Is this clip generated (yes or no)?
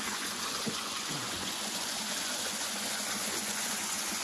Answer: yes